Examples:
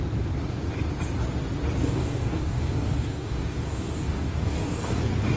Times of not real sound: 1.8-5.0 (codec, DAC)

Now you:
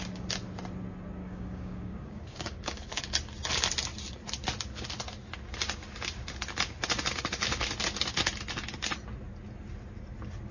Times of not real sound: 1.2-3.0 (codec, DAC)

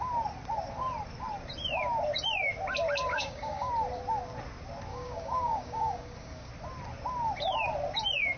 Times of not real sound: 3.1-3.7 (codec, DAC); 4.9-6.5

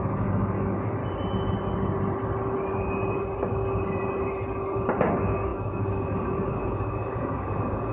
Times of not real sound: 0.0-1.0 (codec, DAC); 5.1-7.9

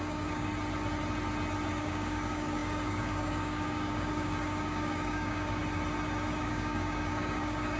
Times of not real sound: 0.0-0.5 (codec, DAC); 1.7-5.6; 6.4-7.8

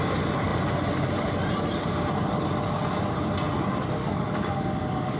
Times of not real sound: 4.0-5.2 (codec, DAC)

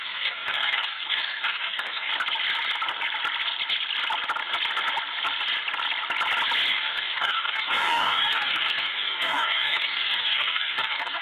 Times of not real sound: 0.0-2.1 (codec, DAC); 6.7-11.2

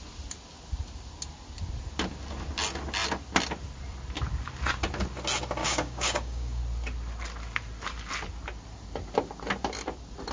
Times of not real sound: 5.6-6.6 (codec, DAC)